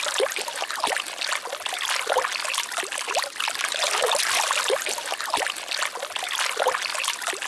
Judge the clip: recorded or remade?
recorded